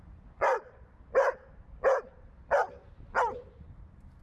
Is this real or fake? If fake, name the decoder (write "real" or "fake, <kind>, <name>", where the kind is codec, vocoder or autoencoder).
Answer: real